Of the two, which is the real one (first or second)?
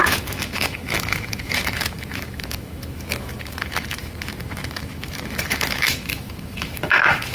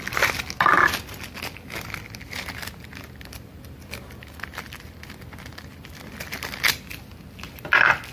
second